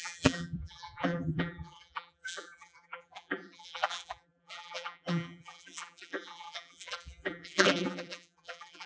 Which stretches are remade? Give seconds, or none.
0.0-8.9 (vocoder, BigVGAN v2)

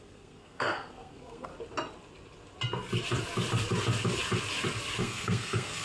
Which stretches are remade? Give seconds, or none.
0.0-1.5 (codec, SNAC); 5.0-5.8

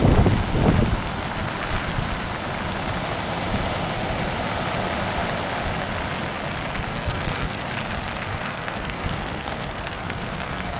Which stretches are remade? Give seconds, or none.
6.9-7.6 (codec, SNAC); 8.3-10.8

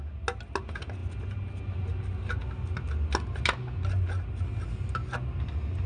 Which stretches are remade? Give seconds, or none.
none

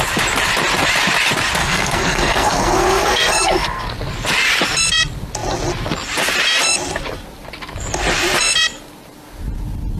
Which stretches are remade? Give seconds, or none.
1.6-3.8 (codec, SNAC)

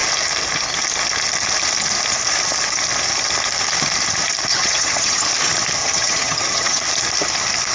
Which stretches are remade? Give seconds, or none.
4.5-5.3 (vocoder, HiFi-GAN); 5.8-6.8

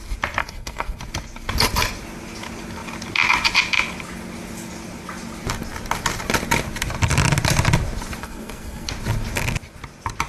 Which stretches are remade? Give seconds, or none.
0.4-1.0 (codec, SNAC); 8.2-8.9